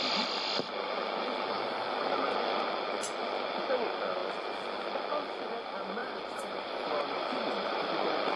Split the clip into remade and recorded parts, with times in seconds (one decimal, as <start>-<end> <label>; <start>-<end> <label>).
0.0-6.0 recorded; 6.0-7.9 remade; 7.9-8.4 recorded